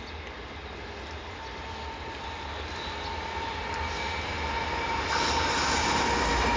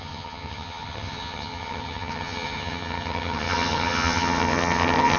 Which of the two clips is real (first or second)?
first